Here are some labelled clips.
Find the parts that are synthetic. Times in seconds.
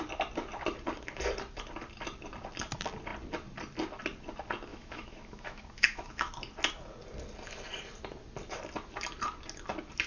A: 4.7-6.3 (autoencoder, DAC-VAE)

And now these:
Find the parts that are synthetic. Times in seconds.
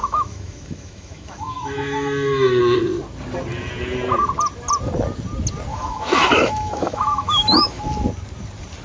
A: 0.0-2.6 (autoencoder, DAC-VAE); 5.7-7.8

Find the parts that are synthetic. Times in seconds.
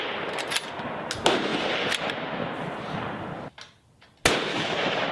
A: 4.5-5.1 (autoencoder, DAC-VAE)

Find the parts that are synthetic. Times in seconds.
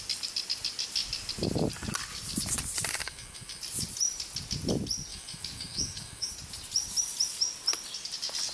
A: 3.0-3.6 (autoencoder, DAC-VAE); 5.1-6.3